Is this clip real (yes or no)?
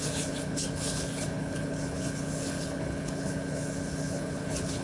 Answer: no